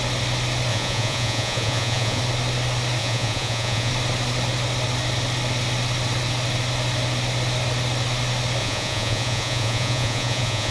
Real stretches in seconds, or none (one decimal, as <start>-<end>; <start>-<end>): 0.0-0.7; 2.2-3.0; 3.9-8.6